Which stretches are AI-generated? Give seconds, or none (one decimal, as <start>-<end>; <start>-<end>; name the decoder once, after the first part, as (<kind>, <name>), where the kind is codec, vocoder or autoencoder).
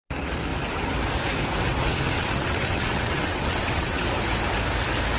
1.7-4.0 (vocoder, WaveNeXt)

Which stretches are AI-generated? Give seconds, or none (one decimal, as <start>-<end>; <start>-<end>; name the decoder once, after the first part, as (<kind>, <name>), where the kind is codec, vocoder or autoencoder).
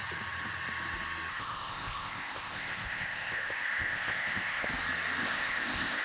1.3-4.7 (codec, ZipCodec); 5.2-6.0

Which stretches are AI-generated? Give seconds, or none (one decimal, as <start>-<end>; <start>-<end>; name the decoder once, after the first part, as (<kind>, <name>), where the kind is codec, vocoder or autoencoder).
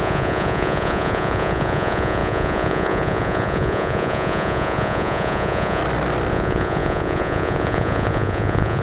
0.0-5.8 (vocoder, Vocos); 6.3-8.8